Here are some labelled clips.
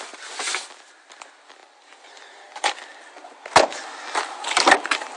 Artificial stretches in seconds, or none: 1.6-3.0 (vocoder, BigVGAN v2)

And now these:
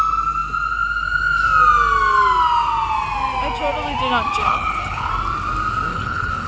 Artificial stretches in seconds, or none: 4.4-5.1 (codec, HILCodec); 5.9-6.5

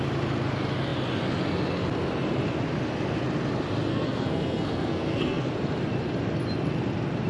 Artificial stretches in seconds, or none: 3.9-5.5 (codec, SNAC)